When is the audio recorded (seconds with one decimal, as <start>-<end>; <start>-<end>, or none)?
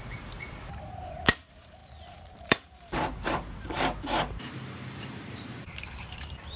none